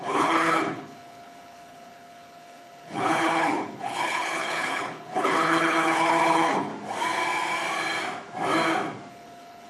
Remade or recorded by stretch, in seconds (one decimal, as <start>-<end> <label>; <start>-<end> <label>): 0.0-6.7 remade; 6.7-9.1 recorded; 9.1-9.7 remade